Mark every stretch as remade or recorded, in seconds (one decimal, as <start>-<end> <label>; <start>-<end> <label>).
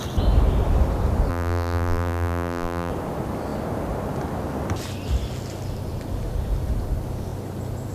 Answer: 0.0-1.3 recorded; 1.3-2.9 remade; 2.9-7.9 recorded